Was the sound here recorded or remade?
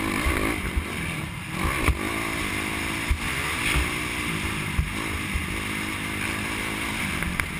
recorded